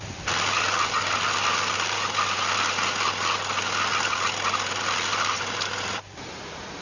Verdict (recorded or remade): recorded